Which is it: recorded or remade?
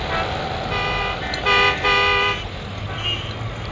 recorded